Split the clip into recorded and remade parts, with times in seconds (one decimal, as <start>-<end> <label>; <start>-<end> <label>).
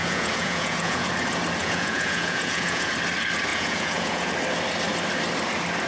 0.0-1.1 remade; 1.1-1.6 recorded; 1.6-2.9 remade; 2.9-3.5 recorded; 3.5-4.3 remade; 4.3-5.9 recorded